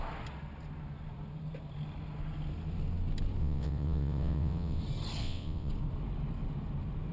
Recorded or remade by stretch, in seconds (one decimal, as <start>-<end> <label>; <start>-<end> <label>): 0.0-3.4 recorded; 3.4-4.8 remade; 4.8-5.2 recorded; 5.2-5.7 remade; 5.7-7.1 recorded